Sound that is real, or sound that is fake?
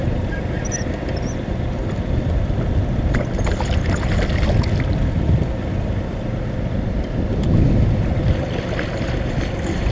real